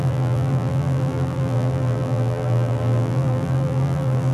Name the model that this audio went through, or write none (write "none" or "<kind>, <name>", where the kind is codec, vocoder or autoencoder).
vocoder, BigVGAN v2